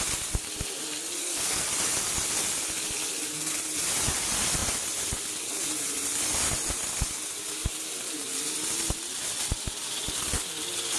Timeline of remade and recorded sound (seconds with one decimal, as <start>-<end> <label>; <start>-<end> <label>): 0.0-1.2 recorded; 1.2-1.7 remade; 1.7-11.0 recorded